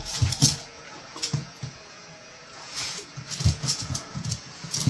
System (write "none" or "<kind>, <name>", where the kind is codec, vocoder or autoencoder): vocoder, Vocos